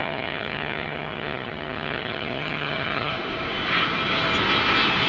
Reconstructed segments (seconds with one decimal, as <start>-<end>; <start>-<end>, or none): 0.0-3.1